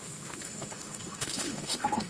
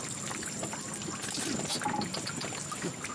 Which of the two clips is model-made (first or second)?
first